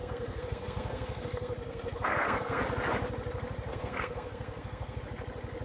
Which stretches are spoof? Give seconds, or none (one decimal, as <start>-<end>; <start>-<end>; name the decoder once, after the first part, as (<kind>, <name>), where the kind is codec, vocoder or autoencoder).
0.0-2.6 (codec, SNAC); 3.7-5.0